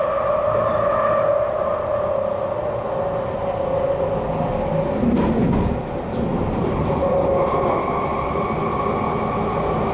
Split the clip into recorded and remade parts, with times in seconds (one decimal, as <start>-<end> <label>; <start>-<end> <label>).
0.0-9.9 recorded